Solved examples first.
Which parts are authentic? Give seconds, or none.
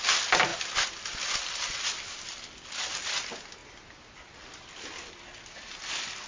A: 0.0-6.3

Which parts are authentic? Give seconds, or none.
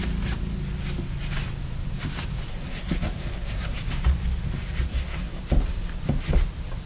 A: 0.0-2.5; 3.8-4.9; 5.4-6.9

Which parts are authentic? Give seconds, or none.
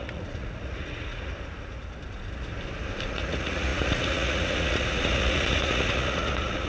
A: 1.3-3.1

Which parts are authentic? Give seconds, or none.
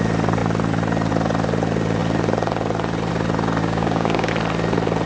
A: 0.0-3.6; 4.3-5.1